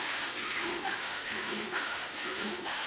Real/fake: fake